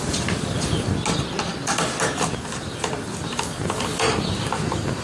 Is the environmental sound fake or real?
real